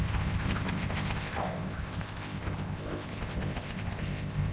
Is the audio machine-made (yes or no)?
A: yes